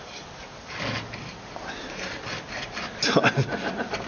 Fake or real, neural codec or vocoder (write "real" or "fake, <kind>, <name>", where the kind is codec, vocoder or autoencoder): real